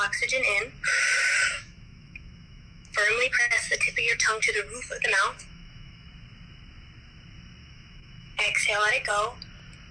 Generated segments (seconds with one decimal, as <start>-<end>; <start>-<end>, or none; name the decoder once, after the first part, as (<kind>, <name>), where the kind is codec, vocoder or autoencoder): 1.5-6.1 (autoencoder, DAC-VAE); 7.6-9.1